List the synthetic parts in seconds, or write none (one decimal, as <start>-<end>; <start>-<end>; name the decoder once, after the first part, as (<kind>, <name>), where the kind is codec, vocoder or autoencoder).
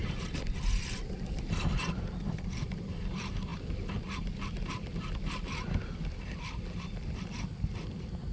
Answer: none